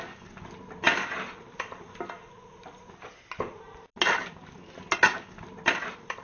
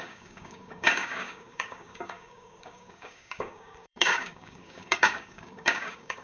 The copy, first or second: second